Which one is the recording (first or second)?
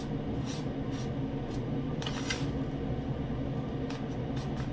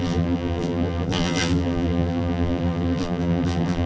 first